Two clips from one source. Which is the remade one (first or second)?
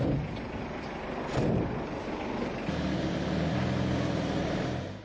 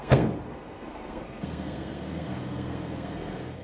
second